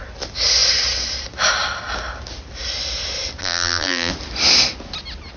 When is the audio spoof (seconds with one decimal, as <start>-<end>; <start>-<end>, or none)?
3.4-4.1